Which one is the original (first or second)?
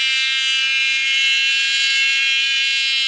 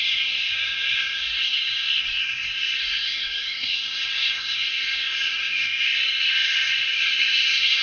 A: first